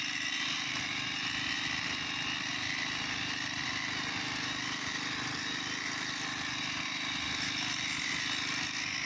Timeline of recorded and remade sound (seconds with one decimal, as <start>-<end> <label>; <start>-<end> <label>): 0.0-9.1 recorded